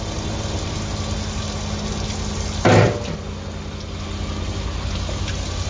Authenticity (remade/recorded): recorded